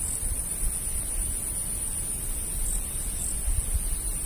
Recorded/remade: remade